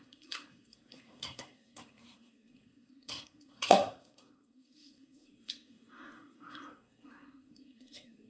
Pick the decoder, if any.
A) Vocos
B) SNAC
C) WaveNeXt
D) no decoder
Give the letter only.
B